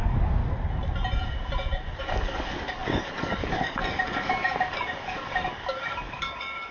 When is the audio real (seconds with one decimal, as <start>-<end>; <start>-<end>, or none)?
0.4-2.0